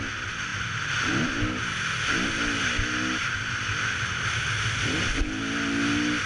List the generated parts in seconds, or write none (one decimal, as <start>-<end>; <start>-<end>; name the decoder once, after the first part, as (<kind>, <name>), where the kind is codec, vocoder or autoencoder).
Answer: none